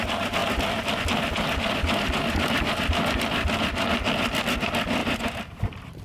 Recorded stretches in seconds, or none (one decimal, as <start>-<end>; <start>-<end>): 0.0-5.0